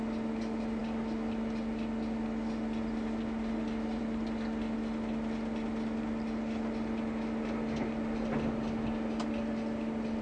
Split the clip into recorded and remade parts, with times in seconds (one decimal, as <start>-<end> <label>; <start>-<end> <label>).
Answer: 0.0-10.2 recorded

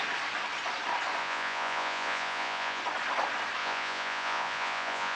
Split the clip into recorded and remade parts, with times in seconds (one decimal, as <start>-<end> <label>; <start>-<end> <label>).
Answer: 0.0-1.2 recorded; 1.2-2.8 remade; 2.8-3.6 recorded; 3.6-5.2 remade

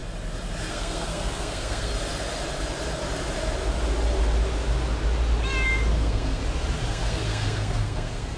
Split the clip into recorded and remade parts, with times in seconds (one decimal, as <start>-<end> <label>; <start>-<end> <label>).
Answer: 0.0-0.7 recorded; 0.7-1.9 remade; 1.9-5.9 recorded; 5.9-6.4 remade; 6.4-6.9 recorded; 6.9-8.4 remade

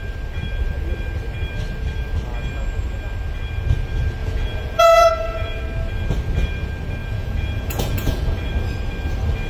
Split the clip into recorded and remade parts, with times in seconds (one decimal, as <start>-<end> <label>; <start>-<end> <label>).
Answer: 0.0-4.2 recorded; 4.2-5.6 remade; 5.6-7.0 recorded; 7.0-8.5 remade; 8.5-9.5 recorded